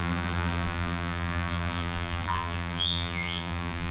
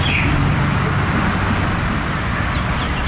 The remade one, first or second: first